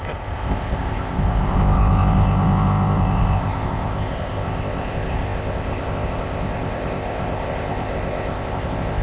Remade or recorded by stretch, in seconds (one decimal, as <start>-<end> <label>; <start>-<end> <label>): 0.0-9.0 remade